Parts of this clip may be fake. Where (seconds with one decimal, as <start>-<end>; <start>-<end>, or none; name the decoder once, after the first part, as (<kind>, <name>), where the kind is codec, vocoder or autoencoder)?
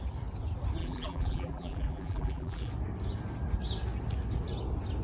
0.8-2.7 (vocoder, BigVGAN v2)